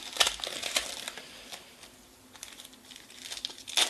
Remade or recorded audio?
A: recorded